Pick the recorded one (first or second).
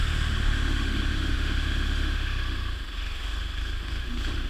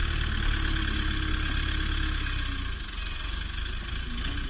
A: second